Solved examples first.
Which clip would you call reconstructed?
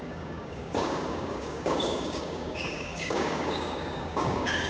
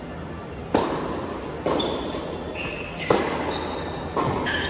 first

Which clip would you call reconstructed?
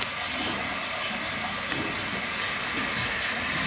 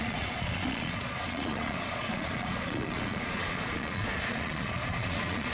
second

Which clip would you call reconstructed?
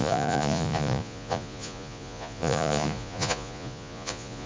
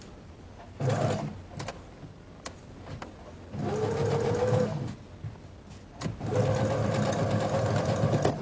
first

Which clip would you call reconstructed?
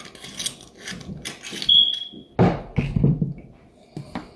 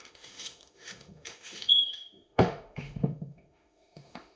second